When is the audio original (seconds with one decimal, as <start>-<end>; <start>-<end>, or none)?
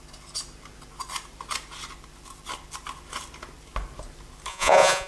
0.0-4.5